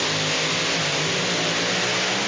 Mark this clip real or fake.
real